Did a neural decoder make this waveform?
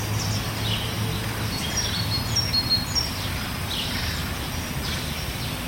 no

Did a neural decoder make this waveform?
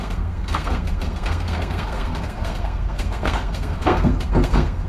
yes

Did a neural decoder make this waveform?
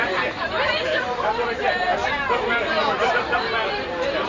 no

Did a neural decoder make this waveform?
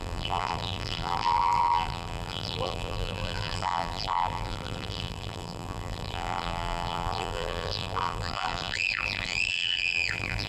yes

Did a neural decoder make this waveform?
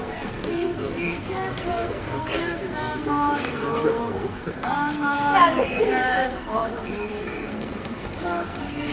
yes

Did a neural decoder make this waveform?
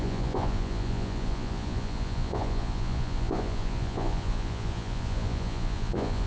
yes